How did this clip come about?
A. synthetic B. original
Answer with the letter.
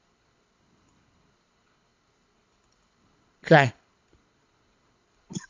A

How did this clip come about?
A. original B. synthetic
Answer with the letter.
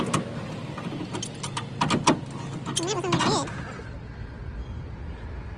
A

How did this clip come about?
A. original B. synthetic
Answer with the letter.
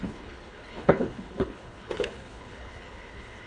B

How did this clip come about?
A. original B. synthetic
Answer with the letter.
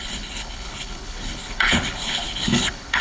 B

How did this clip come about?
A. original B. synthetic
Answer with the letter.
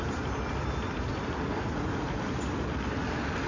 A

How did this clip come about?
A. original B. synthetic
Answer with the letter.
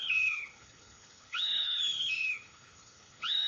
B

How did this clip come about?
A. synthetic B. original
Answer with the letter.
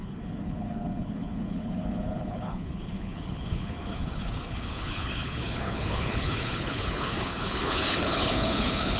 A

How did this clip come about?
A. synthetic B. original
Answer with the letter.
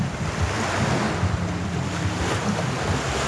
B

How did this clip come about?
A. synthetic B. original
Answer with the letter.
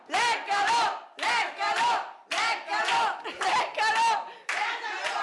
B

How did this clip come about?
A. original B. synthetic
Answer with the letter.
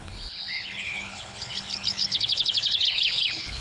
B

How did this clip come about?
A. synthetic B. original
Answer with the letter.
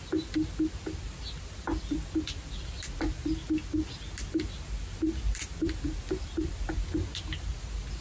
B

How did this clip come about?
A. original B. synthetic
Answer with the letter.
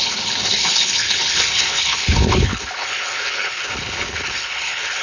B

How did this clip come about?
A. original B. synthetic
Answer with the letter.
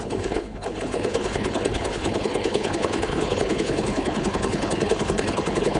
B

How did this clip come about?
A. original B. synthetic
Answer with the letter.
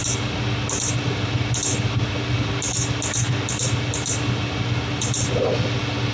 A